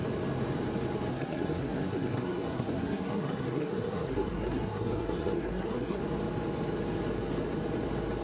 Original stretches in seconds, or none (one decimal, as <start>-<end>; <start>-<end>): 0.0-1.1; 6.0-8.2